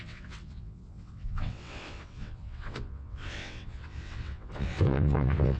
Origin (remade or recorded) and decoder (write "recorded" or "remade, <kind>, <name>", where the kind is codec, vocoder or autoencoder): remade, vocoder, WaveNeXt